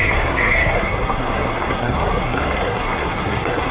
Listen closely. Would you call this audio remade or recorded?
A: remade